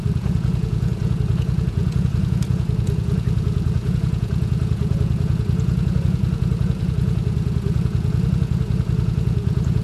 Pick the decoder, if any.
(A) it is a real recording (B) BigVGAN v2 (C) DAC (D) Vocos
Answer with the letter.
D